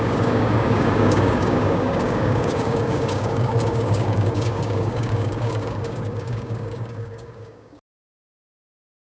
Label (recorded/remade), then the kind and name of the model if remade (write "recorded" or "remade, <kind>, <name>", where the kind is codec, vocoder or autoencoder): remade, codec, DAC